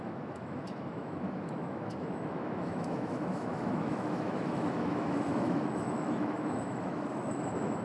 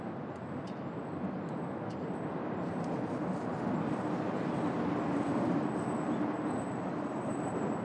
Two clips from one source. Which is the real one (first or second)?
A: second